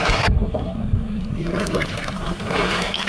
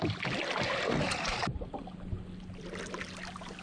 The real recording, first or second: second